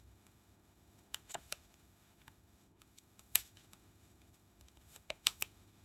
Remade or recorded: remade